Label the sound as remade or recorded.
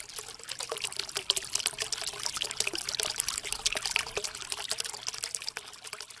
recorded